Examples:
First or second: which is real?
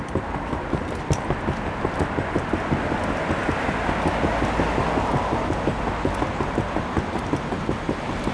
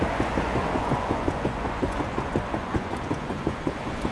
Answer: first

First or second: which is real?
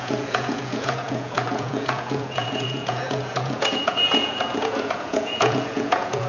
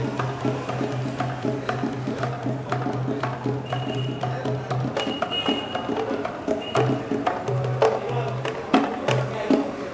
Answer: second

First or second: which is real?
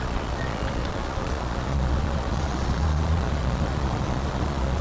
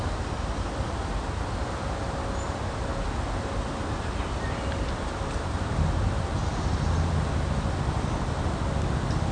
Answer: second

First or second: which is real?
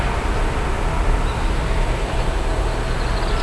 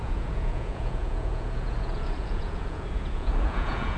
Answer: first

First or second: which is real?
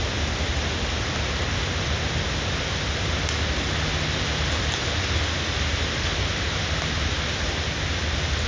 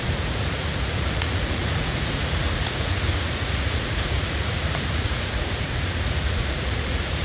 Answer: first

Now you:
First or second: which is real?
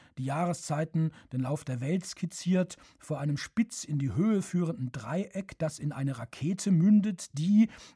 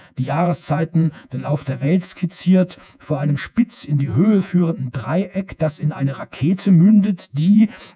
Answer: first